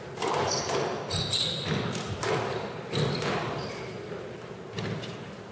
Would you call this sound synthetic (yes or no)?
no